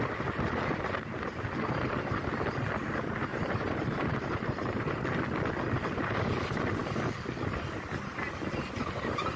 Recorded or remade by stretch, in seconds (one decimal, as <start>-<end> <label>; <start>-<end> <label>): 0.0-3.3 recorded; 3.3-5.2 remade; 5.2-9.4 recorded